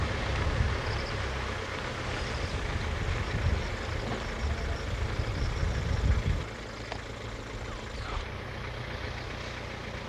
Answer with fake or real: real